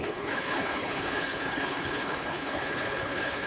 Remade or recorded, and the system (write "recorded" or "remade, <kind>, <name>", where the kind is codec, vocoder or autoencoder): remade, codec, HILCodec